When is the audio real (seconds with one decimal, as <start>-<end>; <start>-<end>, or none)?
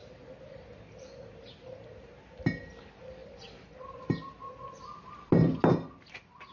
0.0-6.5